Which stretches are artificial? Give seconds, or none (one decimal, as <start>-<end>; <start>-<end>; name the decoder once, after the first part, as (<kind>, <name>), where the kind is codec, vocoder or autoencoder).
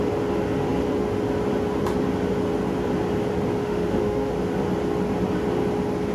3.6-4.3 (autoencoder, DAC-VAE)